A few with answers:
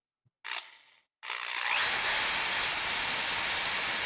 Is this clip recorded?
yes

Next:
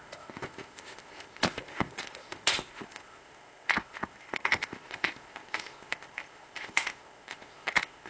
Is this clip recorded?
no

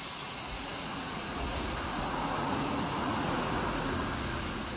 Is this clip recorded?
no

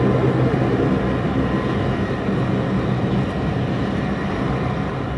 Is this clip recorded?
yes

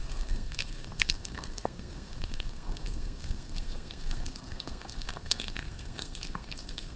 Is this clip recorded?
no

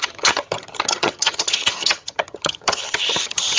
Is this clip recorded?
no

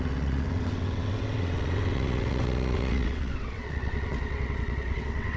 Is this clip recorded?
no